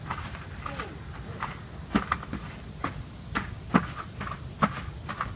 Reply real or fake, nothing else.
real